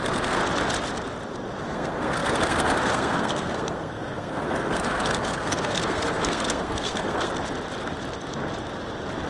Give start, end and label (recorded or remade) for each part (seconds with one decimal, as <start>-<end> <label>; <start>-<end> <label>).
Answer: 0.0-0.4 remade; 0.4-1.6 recorded; 1.6-7.3 remade; 7.3-9.3 recorded